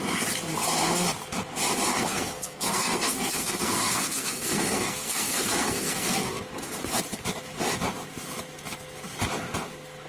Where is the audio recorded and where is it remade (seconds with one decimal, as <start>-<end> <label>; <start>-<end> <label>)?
0.0-1.9 recorded; 1.9-6.4 remade; 6.4-10.1 recorded